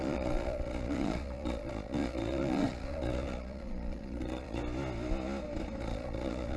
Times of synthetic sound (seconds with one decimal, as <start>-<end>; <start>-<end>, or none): 0.0-4.6; 5.8-6.6